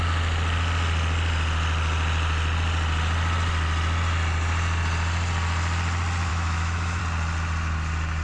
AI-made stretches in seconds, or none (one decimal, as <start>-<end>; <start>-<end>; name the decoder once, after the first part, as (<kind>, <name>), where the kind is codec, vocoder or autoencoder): 6.3-7.0 (autoencoder, DAC-VAE)